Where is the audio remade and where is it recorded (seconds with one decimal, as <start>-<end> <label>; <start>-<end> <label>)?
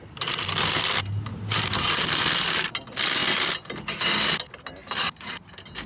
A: 0.0-5.9 recorded